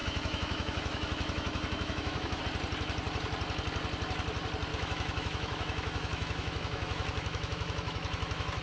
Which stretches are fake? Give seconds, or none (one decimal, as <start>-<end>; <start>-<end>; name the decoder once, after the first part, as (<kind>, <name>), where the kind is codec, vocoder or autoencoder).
0.0-2.4 (autoencoder, DAC-VAE); 4.7-8.6